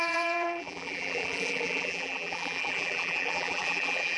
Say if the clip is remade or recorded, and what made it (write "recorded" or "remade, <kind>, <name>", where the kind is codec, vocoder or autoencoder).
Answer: remade, vocoder, BigVGAN v2